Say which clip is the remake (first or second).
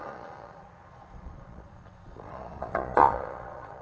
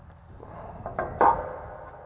first